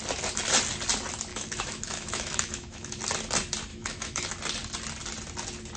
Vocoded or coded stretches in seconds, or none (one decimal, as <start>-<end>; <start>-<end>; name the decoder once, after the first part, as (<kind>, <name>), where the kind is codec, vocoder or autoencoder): 1.3-3.0 (autoencoder, DAC-VAE); 3.7-4.3